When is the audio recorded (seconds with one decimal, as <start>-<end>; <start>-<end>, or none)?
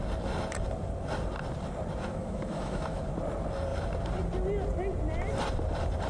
0.0-2.1; 3.0-6.1